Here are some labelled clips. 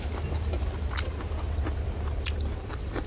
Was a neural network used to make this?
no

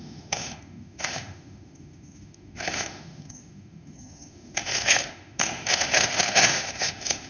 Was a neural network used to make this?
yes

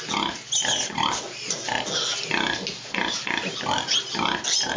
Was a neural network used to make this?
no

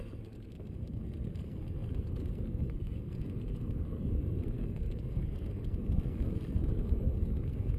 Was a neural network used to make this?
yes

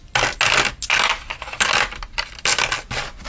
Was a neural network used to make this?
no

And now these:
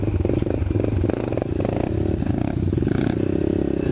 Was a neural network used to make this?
no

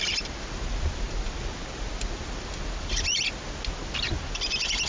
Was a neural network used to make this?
no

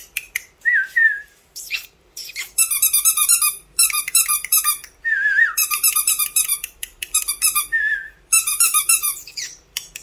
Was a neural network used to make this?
yes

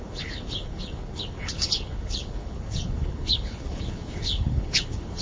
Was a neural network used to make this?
yes